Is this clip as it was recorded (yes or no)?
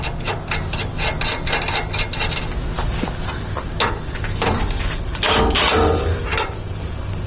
yes